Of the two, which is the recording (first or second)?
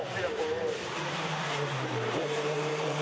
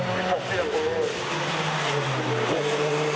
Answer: second